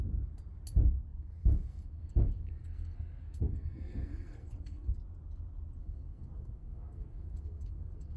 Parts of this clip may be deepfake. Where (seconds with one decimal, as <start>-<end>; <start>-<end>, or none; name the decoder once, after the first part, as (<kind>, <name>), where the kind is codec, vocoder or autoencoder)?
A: 1.1-5.0 (codec, SNAC); 5.8-8.2